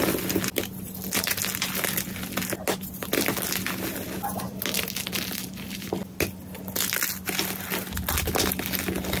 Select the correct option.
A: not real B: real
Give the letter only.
B